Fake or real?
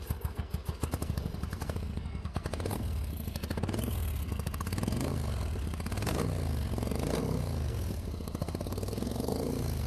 fake